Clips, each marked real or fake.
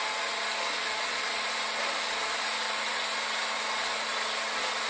real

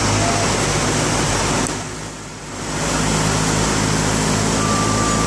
real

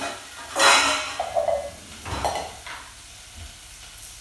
real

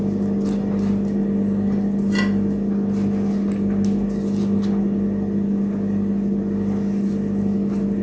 real